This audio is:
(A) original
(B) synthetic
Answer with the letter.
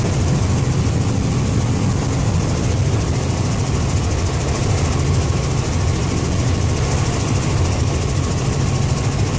A